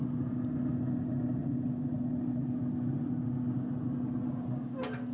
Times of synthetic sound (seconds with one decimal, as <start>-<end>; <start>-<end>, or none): none